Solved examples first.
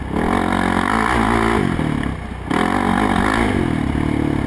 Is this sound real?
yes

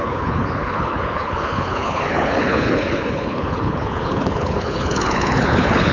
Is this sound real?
no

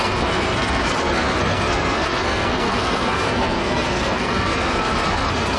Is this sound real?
no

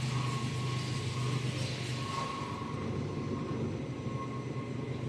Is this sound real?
yes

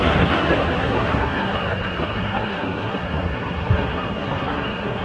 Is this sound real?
no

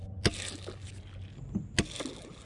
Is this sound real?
yes